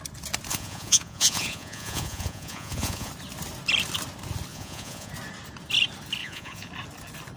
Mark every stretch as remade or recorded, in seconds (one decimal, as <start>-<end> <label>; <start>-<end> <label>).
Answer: 0.0-0.5 recorded; 0.5-3.1 remade; 3.1-4.5 recorded; 4.5-5.1 remade; 5.1-6.2 recorded; 6.2-6.7 remade; 6.7-7.4 recorded